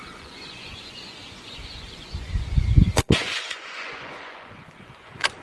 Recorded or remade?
remade